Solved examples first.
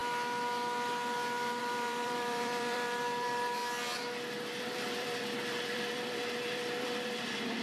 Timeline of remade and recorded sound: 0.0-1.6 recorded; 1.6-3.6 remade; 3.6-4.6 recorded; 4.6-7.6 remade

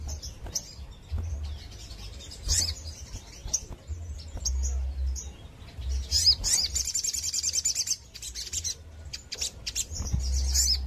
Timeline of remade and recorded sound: 0.0-10.9 recorded

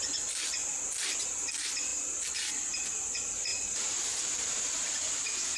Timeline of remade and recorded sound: 0.0-3.5 recorded; 3.5-5.6 remade

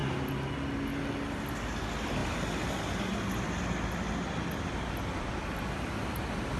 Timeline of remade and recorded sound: 0.0-6.6 recorded

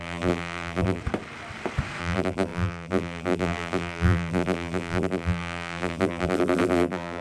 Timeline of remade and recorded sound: 0.0-1.0 remade; 1.0-2.0 recorded; 2.0-7.2 remade